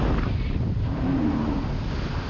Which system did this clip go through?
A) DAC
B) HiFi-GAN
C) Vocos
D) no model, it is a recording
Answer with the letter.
D